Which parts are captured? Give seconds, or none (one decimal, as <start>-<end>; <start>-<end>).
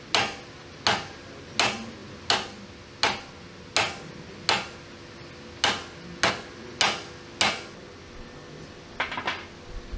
0.0-10.0